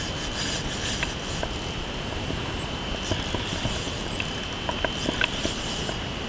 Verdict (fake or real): fake